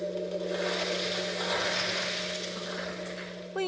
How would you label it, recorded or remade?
recorded